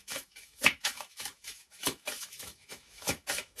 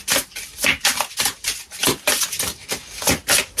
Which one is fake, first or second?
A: first